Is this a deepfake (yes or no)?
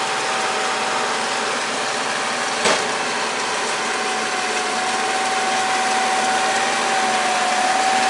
no